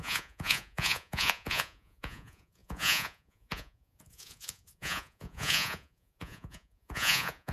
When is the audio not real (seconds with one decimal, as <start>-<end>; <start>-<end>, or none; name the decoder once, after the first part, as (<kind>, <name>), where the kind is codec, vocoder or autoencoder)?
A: 0.0-7.5 (vocoder, Vocos)